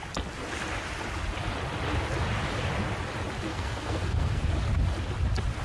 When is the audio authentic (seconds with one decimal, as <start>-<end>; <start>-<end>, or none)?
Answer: 0.0-3.5; 4.5-5.6